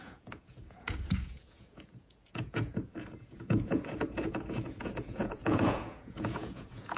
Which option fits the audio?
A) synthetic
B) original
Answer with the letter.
A